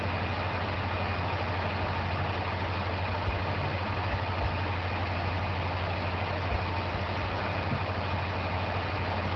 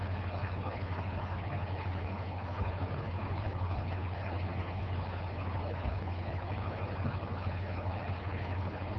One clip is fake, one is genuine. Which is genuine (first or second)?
first